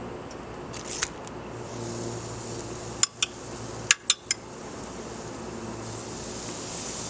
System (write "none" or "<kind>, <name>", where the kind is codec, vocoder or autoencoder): none